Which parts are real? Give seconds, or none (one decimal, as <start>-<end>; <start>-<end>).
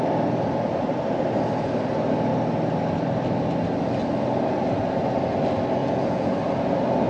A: 0.0-5.8; 6.3-7.1